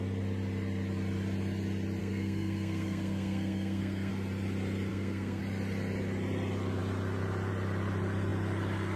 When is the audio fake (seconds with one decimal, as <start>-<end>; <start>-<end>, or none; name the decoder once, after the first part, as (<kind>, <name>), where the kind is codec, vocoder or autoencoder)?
2.0-4.1 (codec, SNAC); 4.9-5.4

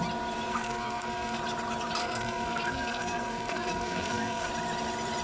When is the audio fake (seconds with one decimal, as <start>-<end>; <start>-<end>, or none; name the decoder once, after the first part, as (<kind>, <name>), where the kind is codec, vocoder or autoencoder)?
0.5-1.4 (codec, SNAC); 2.0-4.5